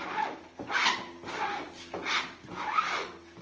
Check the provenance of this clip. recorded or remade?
recorded